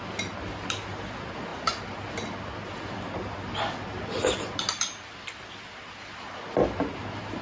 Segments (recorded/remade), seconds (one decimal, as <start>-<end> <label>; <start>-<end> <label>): 0.0-7.4 recorded